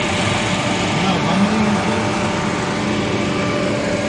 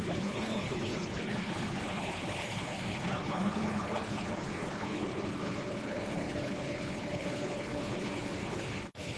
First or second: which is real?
first